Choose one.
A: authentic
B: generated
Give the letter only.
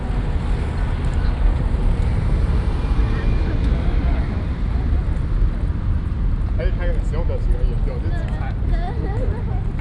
A